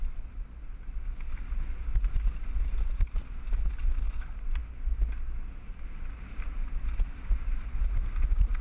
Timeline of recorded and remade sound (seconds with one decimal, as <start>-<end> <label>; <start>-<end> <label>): 0.0-8.6 recorded